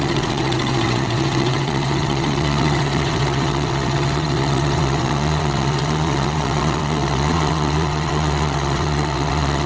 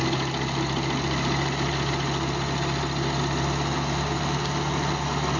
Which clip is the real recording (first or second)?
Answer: second